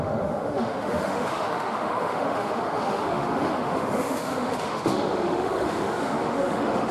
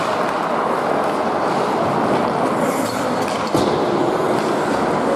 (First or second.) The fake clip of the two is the first